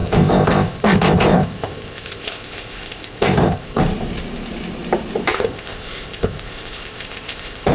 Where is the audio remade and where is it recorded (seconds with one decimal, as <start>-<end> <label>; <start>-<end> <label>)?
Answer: 0.0-3.8 remade; 3.8-5.3 recorded; 5.3-7.7 remade

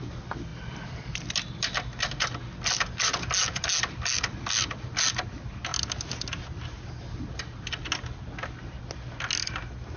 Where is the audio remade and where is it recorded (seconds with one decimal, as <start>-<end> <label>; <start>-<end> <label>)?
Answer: 0.0-10.0 recorded

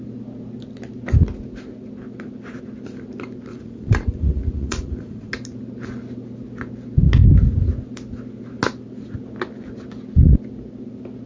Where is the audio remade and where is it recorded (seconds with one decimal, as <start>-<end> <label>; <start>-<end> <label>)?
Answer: 0.0-3.5 recorded; 3.5-5.3 remade; 5.3-11.3 recorded

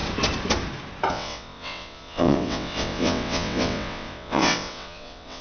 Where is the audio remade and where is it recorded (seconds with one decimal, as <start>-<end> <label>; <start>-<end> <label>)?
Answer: 0.0-1.1 recorded; 1.1-5.4 remade

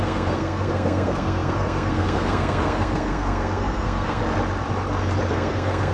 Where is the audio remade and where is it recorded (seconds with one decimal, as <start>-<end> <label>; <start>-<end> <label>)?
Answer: 0.0-4.2 remade; 4.2-5.3 recorded; 5.3-5.9 remade

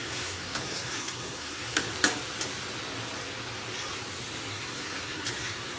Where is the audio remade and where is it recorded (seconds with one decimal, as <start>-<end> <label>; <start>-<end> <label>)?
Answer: 0.0-1.9 remade; 1.9-4.5 recorded; 4.5-5.8 remade

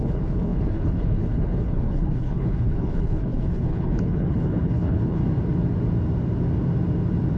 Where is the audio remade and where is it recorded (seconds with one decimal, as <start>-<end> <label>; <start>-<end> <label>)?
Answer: 0.0-5.2 remade; 5.2-7.4 recorded